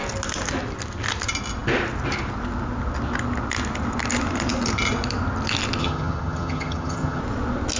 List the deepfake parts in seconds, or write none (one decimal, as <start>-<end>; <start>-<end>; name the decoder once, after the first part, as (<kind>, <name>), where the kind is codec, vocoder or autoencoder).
5.8-7.2 (vocoder, HiFi-GAN)

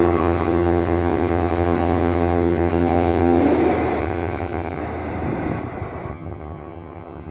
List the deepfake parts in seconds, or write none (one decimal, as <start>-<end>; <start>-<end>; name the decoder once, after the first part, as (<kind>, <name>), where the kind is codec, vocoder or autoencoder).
0.0-3.4 (vocoder, HiFi-GAN); 4.0-4.8; 6.1-7.3

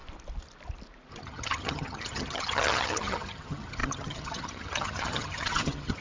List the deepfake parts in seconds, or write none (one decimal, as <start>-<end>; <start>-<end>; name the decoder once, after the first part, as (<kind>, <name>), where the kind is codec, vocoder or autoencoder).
1.1-6.0 (vocoder, HiFi-GAN)

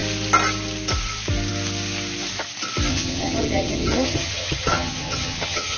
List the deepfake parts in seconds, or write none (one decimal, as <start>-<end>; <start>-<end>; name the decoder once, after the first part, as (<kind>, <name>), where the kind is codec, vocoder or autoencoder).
2.9-5.8 (vocoder, HiFi-GAN)

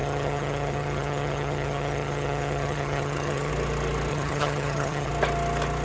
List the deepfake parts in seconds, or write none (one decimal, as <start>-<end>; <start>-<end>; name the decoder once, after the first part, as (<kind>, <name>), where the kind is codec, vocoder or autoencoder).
0.0-3.5 (vocoder, HiFi-GAN); 4.1-5.1

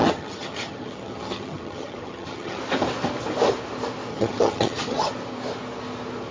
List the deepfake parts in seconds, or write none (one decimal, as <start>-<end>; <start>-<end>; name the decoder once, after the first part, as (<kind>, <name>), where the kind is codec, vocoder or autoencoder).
0.0-2.6 (vocoder, HiFi-GAN); 4.1-5.1

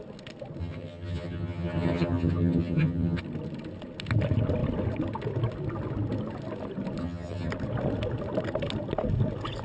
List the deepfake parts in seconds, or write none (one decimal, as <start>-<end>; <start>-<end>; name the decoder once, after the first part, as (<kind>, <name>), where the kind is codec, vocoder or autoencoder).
0.6-3.2 (vocoder, HiFi-GAN); 7.0-7.5

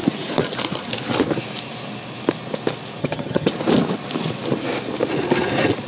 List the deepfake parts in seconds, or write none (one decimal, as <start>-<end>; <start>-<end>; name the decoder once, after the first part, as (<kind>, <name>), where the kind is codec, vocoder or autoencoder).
3.0-3.5 (vocoder, HiFi-GAN)